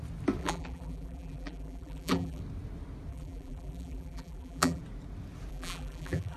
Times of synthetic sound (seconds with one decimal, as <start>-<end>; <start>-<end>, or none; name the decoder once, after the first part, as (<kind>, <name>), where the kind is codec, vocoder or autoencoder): 0.4-2.4 (vocoder, BigVGAN v2); 3.1-4.8; 5.5-6.4